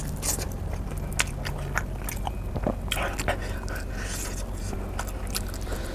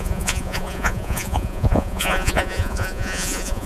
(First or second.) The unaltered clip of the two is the first